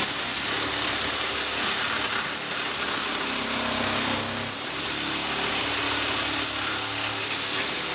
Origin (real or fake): real